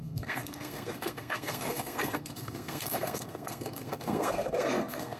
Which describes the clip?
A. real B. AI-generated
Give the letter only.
B